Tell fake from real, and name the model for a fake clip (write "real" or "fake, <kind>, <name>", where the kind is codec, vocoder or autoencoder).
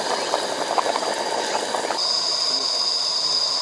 real